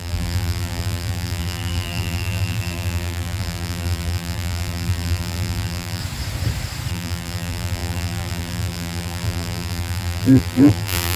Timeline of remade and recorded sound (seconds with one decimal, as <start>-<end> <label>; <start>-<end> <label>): 0.0-6.0 remade; 6.0-6.9 recorded; 6.9-11.2 remade